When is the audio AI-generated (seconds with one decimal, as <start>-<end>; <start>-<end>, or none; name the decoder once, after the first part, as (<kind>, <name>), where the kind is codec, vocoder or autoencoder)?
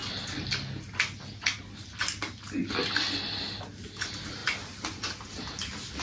none